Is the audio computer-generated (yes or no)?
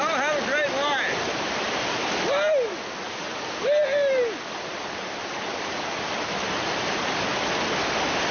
no